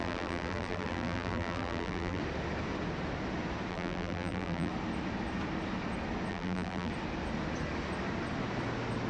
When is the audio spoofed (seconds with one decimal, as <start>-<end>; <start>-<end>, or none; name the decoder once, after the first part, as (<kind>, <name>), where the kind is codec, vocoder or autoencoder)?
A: 0.0-2.2 (vocoder, BigVGAN v2); 3.7-4.7; 6.3-6.9